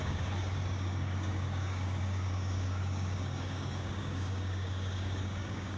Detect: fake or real fake